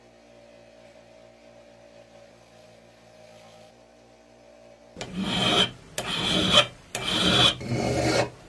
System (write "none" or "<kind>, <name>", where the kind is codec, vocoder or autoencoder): none